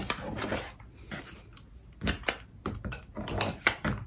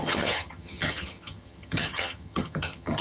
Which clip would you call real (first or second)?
first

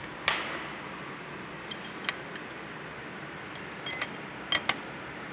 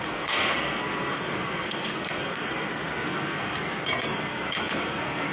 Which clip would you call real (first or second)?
first